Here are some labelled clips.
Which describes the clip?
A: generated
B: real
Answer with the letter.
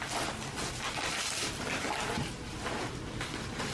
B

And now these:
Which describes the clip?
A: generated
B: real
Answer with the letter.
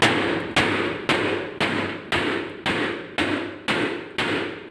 B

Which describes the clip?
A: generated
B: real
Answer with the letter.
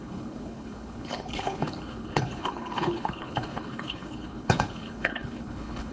A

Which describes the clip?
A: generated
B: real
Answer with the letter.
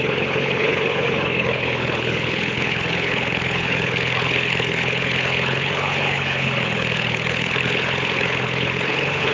A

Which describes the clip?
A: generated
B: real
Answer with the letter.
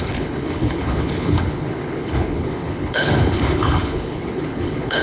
A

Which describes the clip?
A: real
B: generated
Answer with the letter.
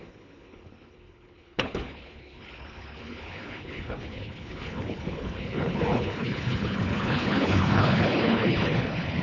B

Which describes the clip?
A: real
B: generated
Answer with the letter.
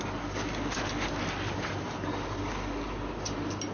A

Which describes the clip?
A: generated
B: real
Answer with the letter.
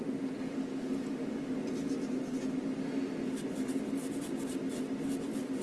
B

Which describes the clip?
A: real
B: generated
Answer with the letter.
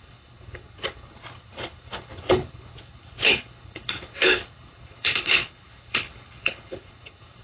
B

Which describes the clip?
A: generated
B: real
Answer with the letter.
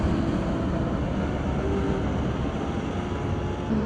B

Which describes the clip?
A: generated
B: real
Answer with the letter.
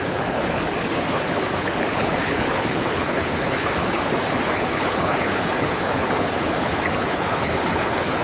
A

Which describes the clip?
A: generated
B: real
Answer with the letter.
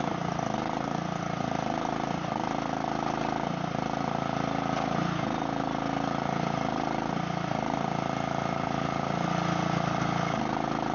B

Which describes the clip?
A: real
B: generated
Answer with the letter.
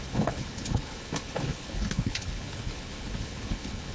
B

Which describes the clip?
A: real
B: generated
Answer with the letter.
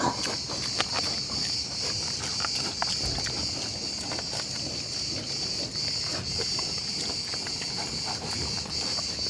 A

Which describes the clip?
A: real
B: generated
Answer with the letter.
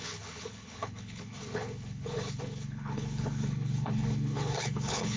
B